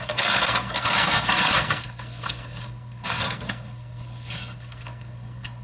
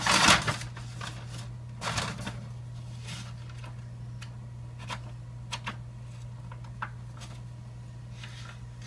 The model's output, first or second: first